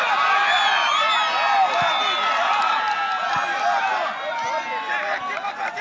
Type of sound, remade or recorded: recorded